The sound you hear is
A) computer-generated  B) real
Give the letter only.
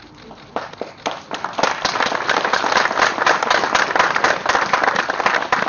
B